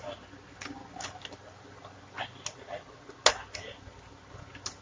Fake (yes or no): no